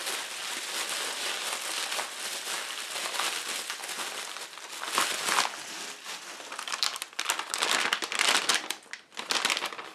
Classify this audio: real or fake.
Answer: real